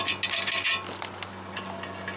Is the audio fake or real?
real